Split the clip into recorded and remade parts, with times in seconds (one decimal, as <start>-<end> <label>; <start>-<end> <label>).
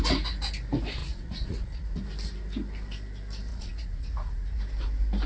0.0-1.0 recorded; 1.0-2.0 remade; 2.0-3.5 recorded; 3.5-4.6 remade; 4.6-5.3 recorded